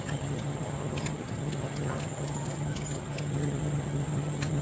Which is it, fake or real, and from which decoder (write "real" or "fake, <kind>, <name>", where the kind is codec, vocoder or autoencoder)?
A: fake, vocoder, HiFi-GAN